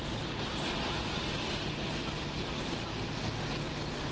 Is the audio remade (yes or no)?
no